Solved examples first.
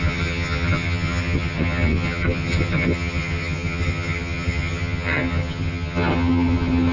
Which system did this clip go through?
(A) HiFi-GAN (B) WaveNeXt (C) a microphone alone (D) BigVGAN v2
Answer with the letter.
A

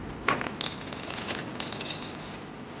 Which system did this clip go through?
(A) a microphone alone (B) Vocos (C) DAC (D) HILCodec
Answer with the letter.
A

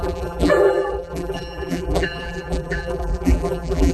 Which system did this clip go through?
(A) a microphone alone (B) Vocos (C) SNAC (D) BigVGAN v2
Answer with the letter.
D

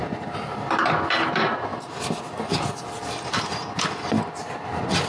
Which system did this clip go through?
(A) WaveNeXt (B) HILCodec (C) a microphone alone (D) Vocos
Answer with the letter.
C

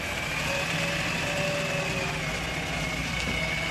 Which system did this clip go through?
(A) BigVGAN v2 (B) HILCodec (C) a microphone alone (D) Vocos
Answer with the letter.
C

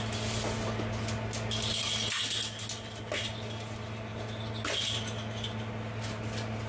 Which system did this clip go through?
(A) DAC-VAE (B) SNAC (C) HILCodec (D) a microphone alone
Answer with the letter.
D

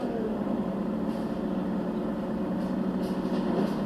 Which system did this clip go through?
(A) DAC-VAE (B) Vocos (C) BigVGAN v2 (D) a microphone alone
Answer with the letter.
D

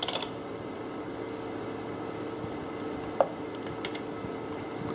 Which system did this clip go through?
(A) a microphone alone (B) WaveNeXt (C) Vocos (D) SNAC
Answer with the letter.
A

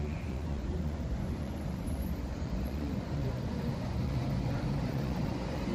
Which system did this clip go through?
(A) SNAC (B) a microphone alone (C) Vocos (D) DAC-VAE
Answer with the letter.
C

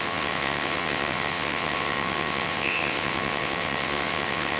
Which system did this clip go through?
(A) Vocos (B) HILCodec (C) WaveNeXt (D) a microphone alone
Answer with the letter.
C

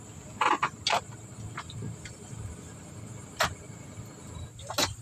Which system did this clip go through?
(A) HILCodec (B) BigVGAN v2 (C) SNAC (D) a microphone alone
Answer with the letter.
D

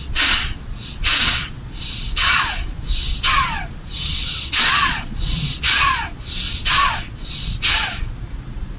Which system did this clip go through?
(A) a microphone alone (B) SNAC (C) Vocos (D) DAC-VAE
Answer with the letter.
C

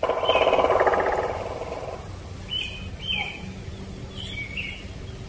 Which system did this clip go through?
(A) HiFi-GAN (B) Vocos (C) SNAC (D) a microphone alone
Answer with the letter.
D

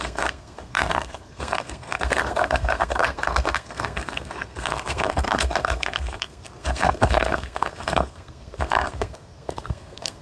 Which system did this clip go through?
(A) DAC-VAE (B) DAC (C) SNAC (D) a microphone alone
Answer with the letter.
C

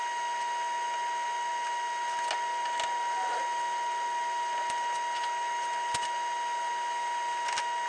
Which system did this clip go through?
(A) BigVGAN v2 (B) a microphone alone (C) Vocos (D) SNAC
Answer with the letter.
B